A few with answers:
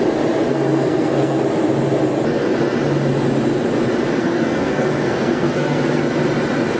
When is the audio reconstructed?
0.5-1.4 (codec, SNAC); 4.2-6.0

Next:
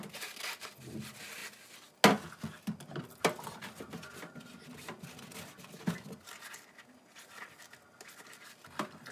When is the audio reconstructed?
none